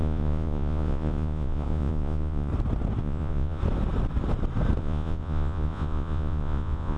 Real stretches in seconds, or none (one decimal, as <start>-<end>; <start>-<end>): 2.5-3.0; 3.6-4.8